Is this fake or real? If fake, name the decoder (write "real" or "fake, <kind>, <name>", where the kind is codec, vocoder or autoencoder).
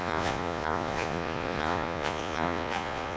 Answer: fake, vocoder, Vocos